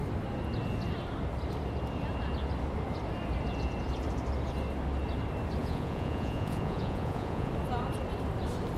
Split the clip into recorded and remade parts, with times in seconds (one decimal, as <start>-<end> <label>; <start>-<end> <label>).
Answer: 0.0-5.6 recorded; 5.6-7.5 remade; 7.5-8.8 recorded